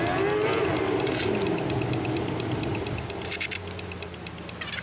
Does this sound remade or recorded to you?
recorded